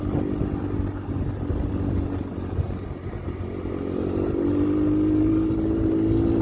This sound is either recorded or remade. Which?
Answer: recorded